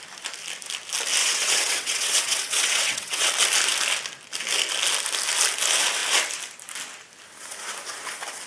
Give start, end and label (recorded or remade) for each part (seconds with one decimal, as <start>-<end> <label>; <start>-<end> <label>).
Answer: 0.0-1.2 recorded; 1.2-3.3 remade; 3.3-8.5 recorded